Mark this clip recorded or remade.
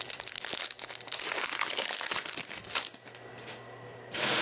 recorded